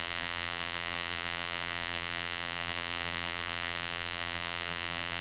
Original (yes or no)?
no